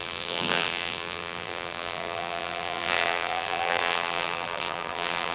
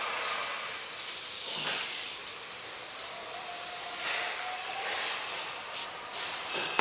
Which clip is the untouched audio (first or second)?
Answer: second